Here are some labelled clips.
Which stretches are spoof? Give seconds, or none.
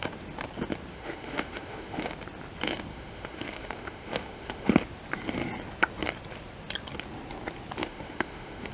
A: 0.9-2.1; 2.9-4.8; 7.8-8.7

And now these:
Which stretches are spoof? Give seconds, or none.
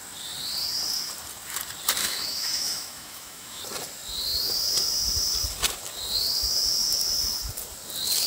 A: 2.0-3.6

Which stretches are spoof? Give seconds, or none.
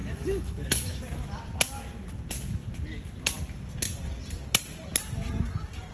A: 0.0-1.0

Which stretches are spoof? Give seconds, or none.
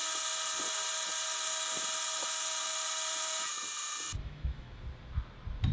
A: 4.2-4.8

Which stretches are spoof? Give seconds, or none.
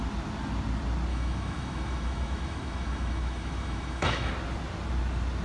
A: 1.1-4.3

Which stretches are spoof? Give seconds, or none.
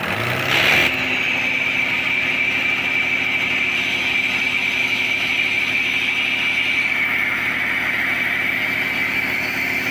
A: 4.8-5.3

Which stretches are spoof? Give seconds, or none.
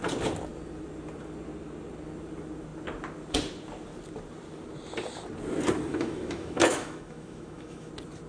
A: 5.9-7.9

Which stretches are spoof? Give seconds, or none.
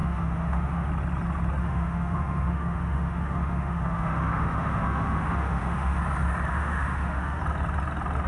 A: 0.0-0.9; 1.6-6.0; 6.5-7.4